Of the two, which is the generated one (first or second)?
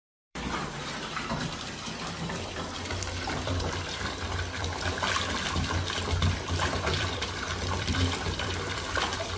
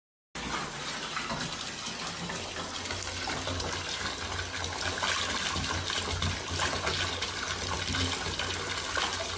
first